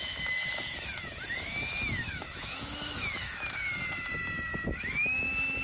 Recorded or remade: remade